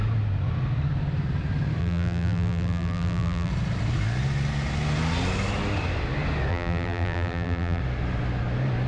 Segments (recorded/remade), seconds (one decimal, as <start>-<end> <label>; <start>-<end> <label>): 0.0-1.8 recorded; 1.8-3.5 remade; 3.5-6.5 recorded; 6.5-7.8 remade; 7.8-8.9 recorded